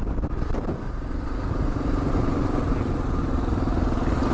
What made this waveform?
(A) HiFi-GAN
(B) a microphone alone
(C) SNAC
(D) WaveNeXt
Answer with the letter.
B